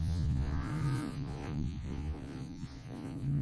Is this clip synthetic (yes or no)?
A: yes